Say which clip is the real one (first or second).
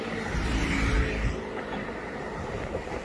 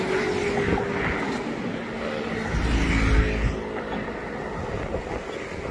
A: second